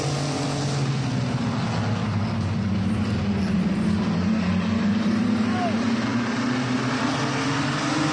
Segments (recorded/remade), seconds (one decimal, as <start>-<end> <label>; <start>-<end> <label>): 0.0-8.1 recorded